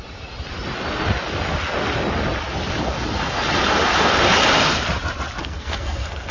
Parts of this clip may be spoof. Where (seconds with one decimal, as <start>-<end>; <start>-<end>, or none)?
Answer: 5.4-6.3